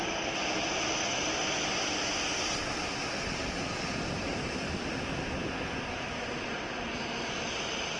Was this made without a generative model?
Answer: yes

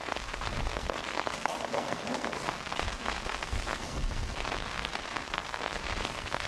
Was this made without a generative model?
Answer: no